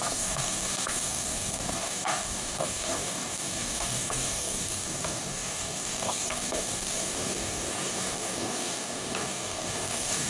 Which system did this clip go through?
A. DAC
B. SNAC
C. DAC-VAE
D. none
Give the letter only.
A